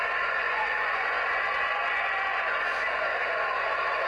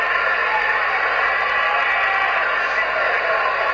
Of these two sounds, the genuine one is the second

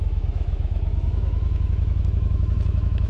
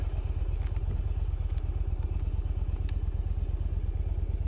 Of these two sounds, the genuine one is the second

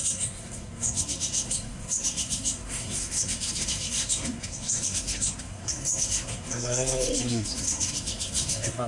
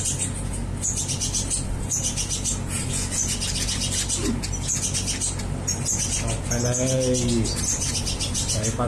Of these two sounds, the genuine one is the second